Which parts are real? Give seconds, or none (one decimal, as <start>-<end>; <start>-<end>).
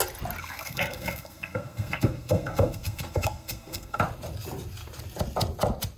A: 0.0-0.4; 4.0-6.0